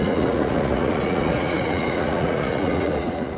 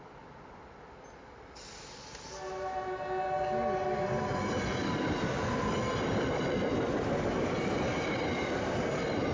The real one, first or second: second